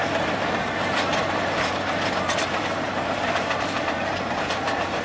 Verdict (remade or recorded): remade